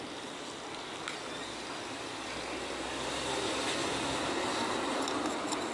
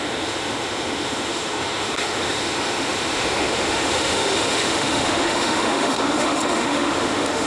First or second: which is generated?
second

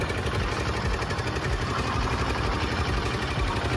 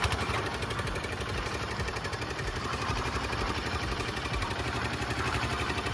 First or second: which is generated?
second